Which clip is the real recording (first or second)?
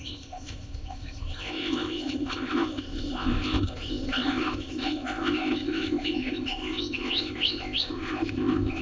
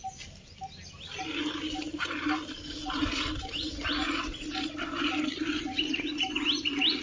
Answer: second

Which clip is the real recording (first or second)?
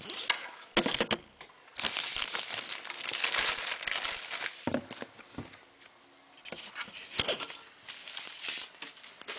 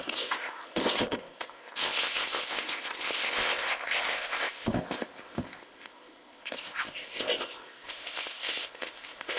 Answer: first